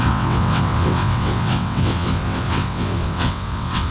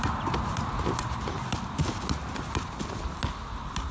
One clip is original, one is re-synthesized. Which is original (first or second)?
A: second